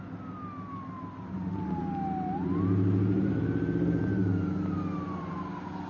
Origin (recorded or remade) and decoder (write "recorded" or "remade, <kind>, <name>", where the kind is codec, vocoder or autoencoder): recorded